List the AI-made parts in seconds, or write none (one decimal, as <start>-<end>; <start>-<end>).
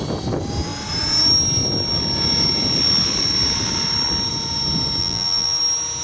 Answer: 5.0-5.6